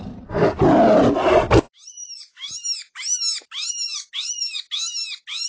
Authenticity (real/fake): real